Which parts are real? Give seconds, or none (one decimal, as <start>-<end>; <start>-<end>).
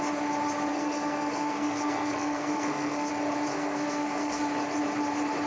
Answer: 0.0-0.7; 3.1-3.5; 4.4-5.5